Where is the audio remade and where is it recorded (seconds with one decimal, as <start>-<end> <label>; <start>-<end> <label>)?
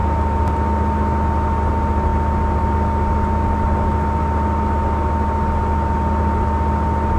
0.0-7.2 recorded